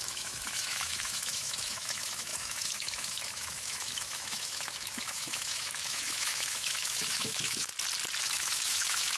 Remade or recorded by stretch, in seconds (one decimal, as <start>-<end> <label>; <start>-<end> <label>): 0.0-7.7 remade; 7.7-8.2 recorded; 8.2-9.2 remade